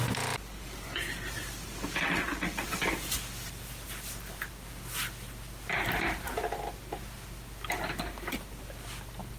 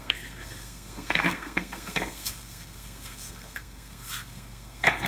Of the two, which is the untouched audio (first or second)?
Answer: first